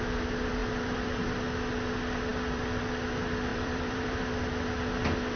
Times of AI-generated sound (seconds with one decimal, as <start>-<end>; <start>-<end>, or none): 0.6-1.7; 2.3-2.8; 3.5-4.2